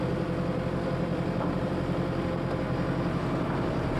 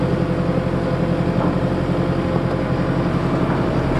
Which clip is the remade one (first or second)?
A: first